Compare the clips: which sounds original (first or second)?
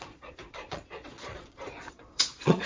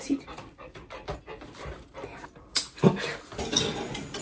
second